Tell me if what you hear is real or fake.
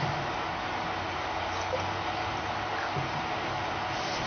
real